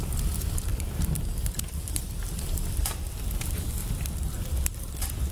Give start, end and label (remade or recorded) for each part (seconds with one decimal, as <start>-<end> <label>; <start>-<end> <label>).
0.0-0.7 recorded; 0.7-3.4 remade; 3.4-5.3 recorded